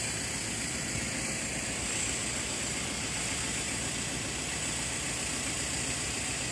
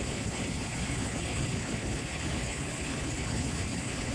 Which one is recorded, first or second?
first